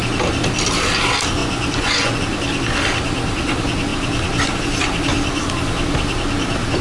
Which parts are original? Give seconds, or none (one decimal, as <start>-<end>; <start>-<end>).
0.0-1.4; 2.2-6.8